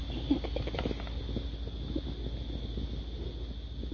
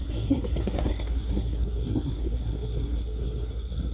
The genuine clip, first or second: first